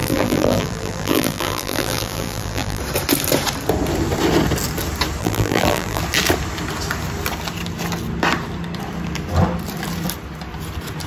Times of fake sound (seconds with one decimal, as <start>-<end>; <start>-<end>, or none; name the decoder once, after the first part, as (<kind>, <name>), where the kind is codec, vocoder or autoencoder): 0.0-2.8 (vocoder, BigVGAN v2); 5.2-6.0